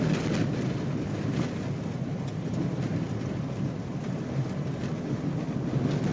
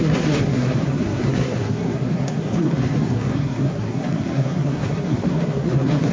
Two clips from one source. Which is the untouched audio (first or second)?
first